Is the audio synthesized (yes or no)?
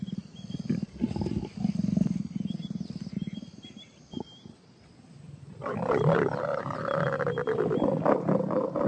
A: no